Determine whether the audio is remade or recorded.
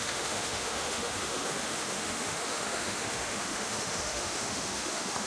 remade